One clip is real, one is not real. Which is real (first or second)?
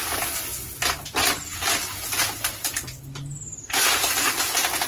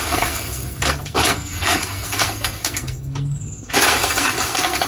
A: first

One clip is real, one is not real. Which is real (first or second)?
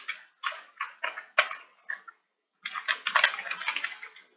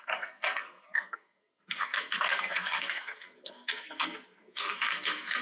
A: first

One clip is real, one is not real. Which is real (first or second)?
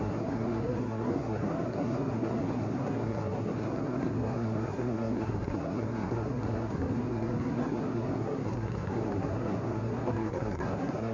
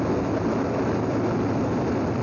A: second